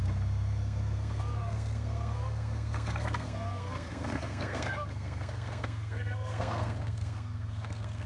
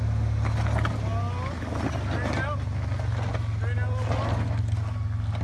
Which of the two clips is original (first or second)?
second